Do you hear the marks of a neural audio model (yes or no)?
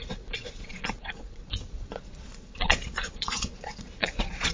yes